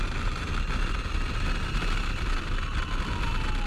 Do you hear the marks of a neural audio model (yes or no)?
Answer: no